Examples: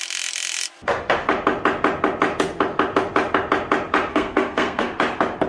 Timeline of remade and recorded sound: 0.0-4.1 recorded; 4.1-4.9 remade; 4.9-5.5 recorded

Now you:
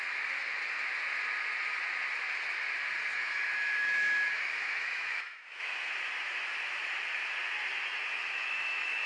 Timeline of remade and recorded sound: 0.0-3.1 recorded; 3.1-5.9 remade; 5.9-8.2 recorded; 8.2-9.1 remade

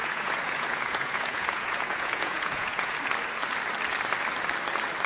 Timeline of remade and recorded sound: 0.0-2.9 remade; 2.9-5.1 recorded